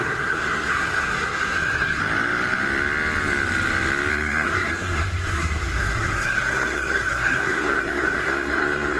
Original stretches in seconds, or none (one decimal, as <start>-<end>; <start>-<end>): 2.0-4.1